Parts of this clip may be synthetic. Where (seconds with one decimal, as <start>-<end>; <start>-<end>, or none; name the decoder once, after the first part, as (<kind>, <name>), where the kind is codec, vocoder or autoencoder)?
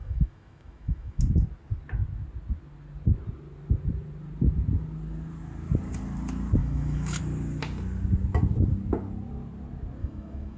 0.0-1.2 (autoencoder, DAC-VAE); 6.6-7.2; 10.0-10.6